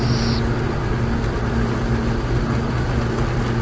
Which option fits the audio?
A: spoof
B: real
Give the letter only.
B